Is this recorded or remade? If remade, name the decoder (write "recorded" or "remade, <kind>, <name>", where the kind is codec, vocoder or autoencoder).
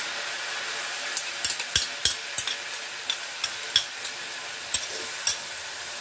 recorded